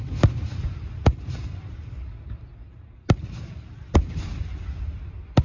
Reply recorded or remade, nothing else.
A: recorded